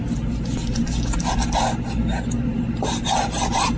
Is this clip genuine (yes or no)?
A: yes